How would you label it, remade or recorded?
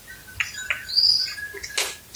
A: recorded